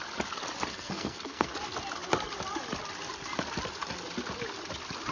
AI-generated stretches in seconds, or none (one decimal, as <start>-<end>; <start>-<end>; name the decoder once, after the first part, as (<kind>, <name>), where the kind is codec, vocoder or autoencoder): 0.7-1.5 (codec, SNAC)